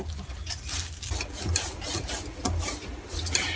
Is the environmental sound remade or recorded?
recorded